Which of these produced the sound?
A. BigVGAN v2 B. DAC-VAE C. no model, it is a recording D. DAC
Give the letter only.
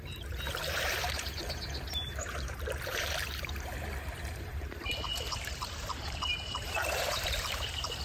A